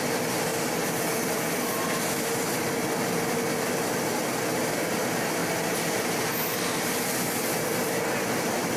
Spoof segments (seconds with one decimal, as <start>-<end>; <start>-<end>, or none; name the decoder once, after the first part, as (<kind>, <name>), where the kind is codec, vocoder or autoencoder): 0.5-2.0 (vocoder, BigVGAN v2)

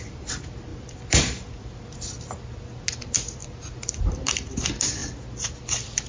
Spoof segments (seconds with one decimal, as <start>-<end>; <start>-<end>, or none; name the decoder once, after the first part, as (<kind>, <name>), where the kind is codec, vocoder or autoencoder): 3.4-4.5 (vocoder, BigVGAN v2)

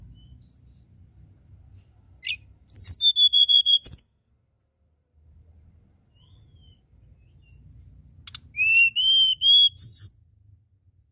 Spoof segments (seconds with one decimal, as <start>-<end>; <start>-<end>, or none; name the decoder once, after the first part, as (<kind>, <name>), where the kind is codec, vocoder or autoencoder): 3.3-4.3 (vocoder, Vocos)

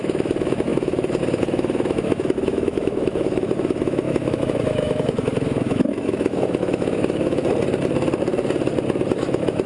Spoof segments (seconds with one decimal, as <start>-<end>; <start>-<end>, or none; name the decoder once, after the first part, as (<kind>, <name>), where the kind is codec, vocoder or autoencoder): 0.0-7.4 (autoencoder, DAC-VAE); 9.1-9.7

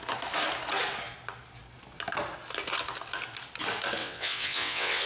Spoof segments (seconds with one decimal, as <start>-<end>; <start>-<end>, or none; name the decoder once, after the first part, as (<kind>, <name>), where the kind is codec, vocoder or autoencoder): 4.0-5.1 (vocoder, WaveNeXt)

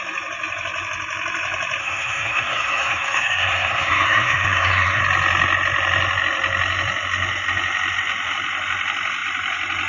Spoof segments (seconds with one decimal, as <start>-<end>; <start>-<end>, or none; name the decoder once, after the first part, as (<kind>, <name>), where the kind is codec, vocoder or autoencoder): 1.8-5.0 (codec, SNAC)